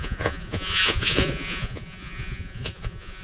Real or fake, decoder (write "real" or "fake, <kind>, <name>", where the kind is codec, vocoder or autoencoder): fake, vocoder, Vocos